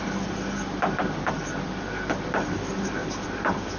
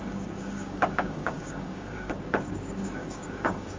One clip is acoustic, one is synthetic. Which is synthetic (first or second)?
second